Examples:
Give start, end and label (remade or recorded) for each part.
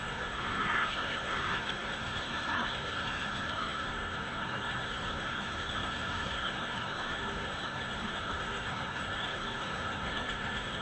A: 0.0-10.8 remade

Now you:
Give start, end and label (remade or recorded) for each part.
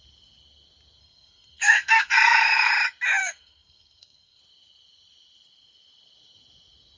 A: 0.0-1.0 recorded; 1.0-2.7 remade; 2.7-3.2 recorded; 3.2-4.4 remade; 4.4-7.0 recorded